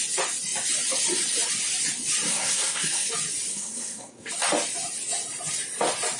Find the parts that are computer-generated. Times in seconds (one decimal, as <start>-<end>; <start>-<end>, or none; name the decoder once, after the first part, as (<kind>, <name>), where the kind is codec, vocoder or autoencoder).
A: 2.3-3.1 (codec, SNAC); 3.5-4.3